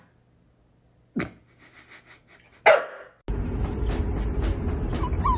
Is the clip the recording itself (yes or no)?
yes